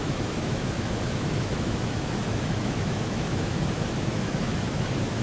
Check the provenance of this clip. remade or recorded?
remade